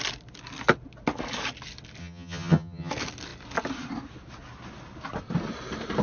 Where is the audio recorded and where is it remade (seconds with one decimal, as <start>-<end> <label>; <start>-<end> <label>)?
0.0-2.0 recorded; 2.0-2.9 remade; 2.9-6.0 recorded